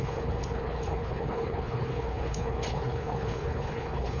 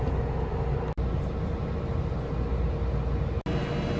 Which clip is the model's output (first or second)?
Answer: first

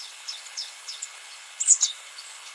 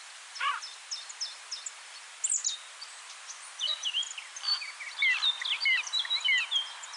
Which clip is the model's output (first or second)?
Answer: first